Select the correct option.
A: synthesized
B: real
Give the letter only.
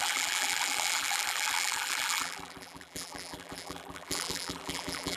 A